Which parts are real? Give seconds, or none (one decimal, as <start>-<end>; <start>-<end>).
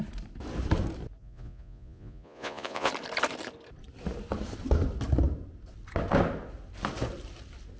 0.0-1.2; 2.9-7.8